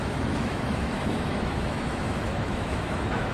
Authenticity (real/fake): fake